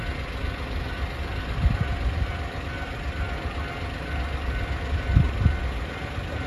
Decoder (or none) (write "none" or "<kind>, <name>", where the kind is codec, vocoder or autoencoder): none